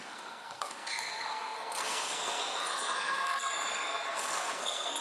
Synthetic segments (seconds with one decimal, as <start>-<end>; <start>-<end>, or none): 0.0-5.0